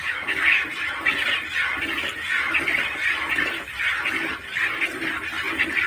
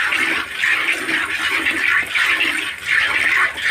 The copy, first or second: second